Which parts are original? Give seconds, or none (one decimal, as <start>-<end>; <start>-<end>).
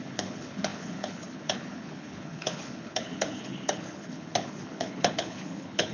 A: none